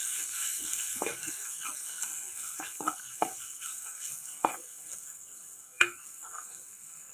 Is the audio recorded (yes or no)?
no